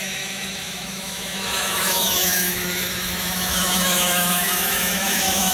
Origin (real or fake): fake